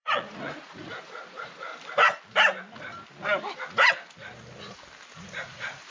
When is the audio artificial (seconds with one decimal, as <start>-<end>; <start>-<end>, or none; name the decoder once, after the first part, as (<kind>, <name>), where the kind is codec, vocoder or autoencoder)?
0.0-1.7 (vocoder, Vocos); 5.2-5.9